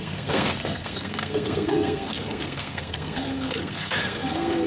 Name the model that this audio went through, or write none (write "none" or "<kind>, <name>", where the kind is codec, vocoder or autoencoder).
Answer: codec, SNAC